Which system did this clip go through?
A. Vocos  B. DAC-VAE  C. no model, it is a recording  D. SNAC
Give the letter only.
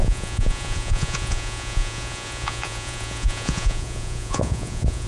A